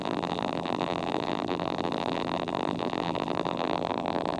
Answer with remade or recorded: remade